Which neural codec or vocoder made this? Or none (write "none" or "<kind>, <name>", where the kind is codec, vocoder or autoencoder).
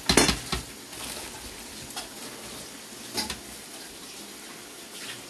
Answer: none